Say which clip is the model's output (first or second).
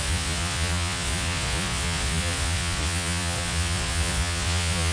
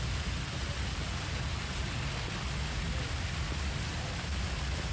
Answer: first